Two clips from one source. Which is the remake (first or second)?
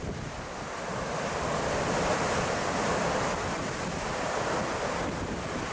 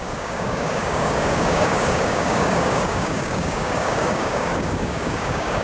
second